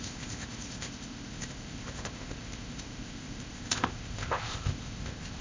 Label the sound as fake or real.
fake